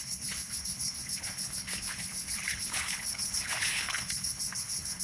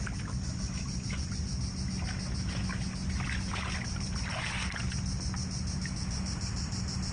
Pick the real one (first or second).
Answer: second